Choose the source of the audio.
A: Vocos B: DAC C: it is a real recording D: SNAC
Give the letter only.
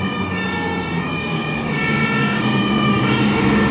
B